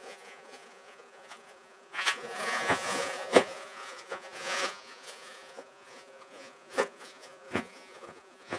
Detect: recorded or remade remade